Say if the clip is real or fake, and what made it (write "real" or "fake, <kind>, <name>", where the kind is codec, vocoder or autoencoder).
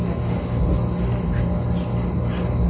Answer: real